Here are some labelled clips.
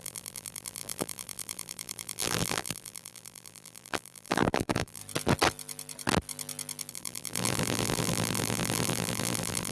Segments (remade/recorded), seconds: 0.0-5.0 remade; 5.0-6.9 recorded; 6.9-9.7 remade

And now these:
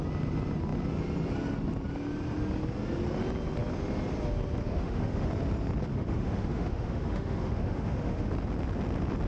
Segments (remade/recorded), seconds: 0.0-4.6 recorded; 4.6-5.3 remade; 5.3-5.9 recorded; 5.9-8.3 remade; 8.3-9.3 recorded

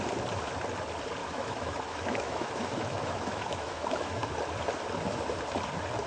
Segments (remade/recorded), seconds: 0.0-1.2 recorded; 1.2-4.3 remade; 4.3-6.1 recorded

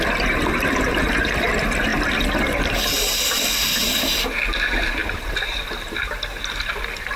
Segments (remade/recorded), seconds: 0.0-0.5 recorded; 0.5-1.5 remade; 1.5-5.0 recorded; 5.0-6.7 remade; 6.7-7.2 recorded

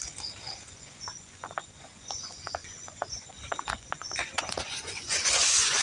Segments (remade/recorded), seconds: 0.0-0.6 recorded; 0.6-5.8 remade